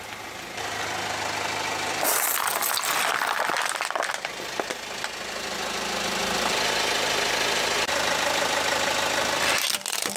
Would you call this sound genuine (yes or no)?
yes